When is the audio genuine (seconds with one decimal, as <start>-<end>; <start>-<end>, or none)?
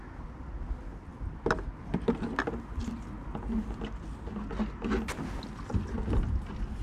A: 0.0-6.8